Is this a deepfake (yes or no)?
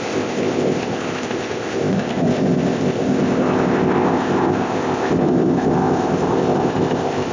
yes